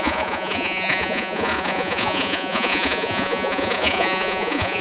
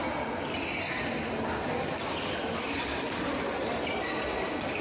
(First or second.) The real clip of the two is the second